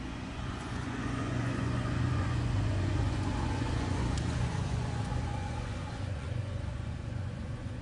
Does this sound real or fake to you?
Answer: fake